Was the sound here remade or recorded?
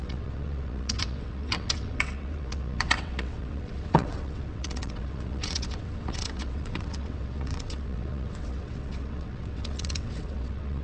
remade